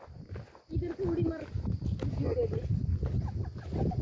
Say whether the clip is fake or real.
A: real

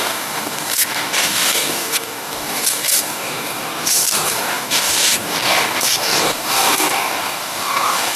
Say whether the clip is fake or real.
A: fake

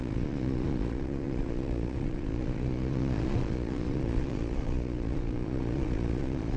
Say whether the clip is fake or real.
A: fake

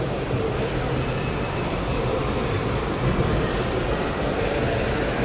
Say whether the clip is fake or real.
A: fake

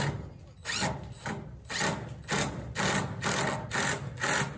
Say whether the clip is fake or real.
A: real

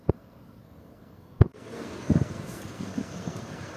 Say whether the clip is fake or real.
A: fake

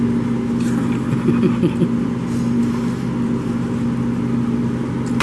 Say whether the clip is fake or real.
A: real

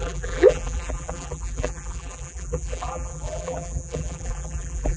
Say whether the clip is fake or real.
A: fake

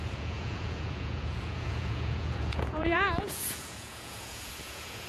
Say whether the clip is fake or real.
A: fake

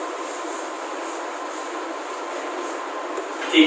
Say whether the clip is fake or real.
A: real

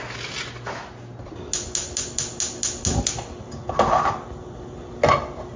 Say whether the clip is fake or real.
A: real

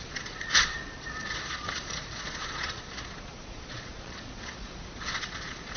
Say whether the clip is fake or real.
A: fake